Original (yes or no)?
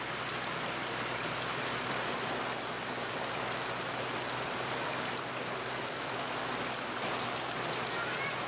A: yes